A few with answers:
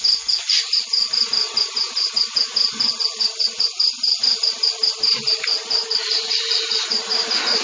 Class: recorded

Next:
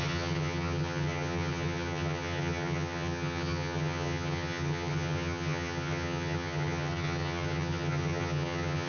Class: remade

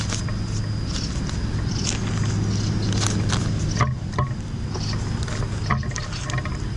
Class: recorded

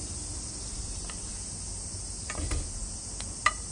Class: recorded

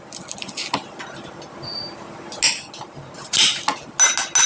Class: recorded